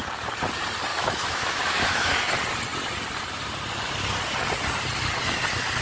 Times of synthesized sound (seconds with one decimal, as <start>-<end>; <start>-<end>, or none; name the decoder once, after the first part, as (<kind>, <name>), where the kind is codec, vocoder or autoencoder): 0.9-2.3 (autoencoder, DAC-VAE)